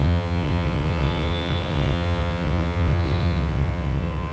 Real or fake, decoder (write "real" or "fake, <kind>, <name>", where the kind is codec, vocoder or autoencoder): fake, vocoder, WaveNeXt